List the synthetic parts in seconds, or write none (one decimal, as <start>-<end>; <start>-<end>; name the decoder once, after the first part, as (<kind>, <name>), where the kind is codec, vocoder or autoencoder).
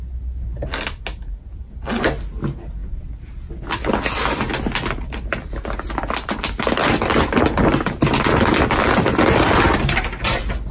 none